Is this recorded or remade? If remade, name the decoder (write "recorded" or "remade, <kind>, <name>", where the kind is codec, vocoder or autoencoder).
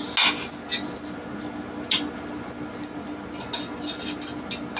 recorded